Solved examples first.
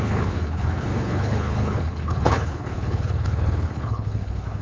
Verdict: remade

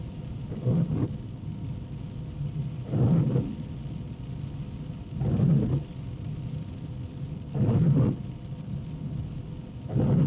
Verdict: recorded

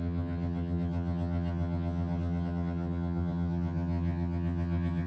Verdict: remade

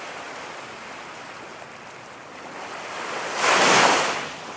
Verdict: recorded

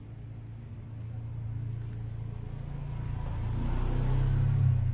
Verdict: recorded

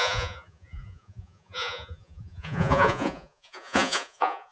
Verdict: remade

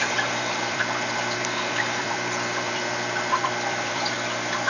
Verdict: remade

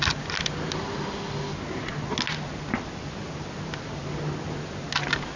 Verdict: recorded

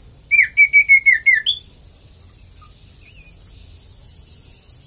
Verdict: recorded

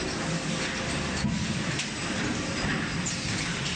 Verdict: recorded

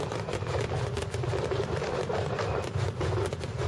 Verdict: remade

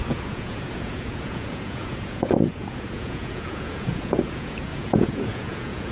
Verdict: remade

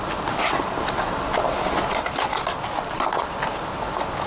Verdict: recorded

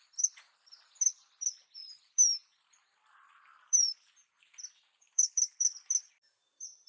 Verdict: remade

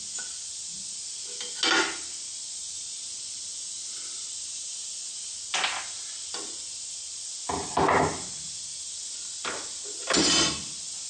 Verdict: recorded